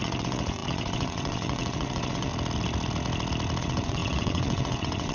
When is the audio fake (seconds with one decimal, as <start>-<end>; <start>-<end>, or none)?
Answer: 0.0-2.3; 3.6-5.1